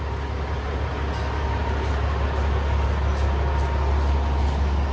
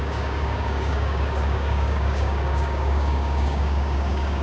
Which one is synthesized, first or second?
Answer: second